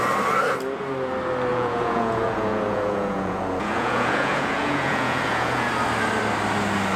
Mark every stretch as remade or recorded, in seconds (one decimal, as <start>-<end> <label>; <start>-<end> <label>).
0.0-1.5 recorded; 1.5-5.7 remade; 5.7-7.0 recorded